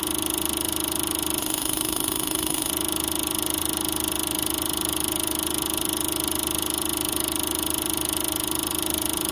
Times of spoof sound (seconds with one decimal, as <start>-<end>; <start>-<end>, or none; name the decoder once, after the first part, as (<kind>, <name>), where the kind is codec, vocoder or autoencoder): 1.4-2.7 (autoencoder, DAC-VAE)